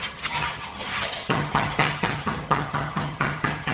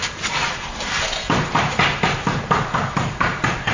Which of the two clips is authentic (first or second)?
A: second